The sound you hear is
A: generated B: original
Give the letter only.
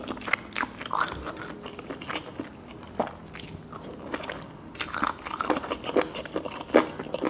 B